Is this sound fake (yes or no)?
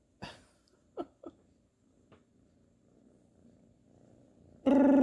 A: no